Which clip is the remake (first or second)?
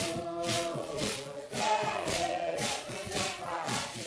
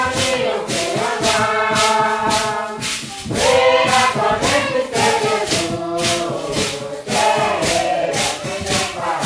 first